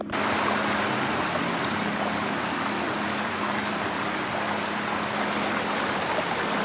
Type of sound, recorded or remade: recorded